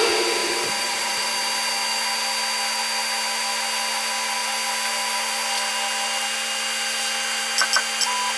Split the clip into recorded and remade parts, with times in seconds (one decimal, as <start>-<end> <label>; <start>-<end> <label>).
0.0-0.4 recorded; 0.4-1.3 remade; 1.3-8.4 recorded

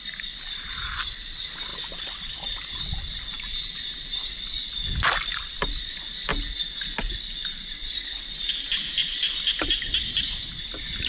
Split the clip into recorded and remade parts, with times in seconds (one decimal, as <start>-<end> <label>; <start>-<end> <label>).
0.0-6.3 remade; 6.3-7.0 recorded; 7.0-11.1 remade

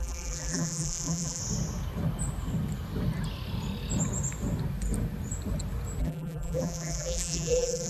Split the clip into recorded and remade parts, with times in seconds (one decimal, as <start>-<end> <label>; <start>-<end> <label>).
0.0-1.4 remade; 1.4-6.0 recorded; 6.0-7.9 remade

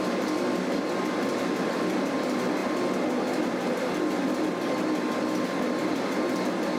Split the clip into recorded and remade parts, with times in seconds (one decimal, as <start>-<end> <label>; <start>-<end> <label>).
0.0-6.8 recorded

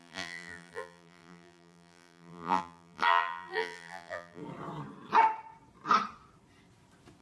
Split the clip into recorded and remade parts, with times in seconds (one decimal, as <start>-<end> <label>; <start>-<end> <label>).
0.0-4.4 remade; 4.4-7.2 recorded

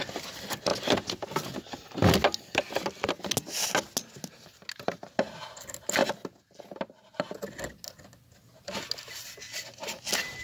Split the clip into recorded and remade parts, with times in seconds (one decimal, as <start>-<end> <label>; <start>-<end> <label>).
0.0-10.4 recorded

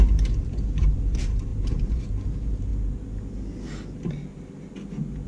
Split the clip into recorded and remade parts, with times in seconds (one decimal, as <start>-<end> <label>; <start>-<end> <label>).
0.0-2.7 remade; 2.7-5.3 recorded

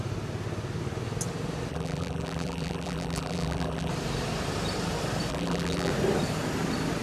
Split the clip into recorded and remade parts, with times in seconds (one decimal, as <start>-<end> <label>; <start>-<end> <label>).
0.0-1.7 recorded; 1.7-3.9 remade; 3.9-5.3 recorded; 5.3-5.9 remade; 5.9-7.0 recorded